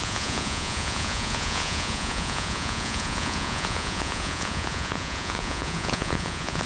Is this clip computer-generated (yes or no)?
yes